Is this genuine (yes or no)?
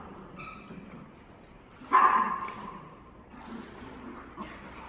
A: yes